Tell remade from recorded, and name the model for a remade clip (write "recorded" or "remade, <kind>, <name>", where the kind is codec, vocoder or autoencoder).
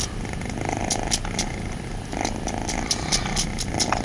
recorded